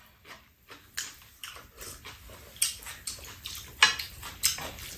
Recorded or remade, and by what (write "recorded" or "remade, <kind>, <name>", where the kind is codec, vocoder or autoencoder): recorded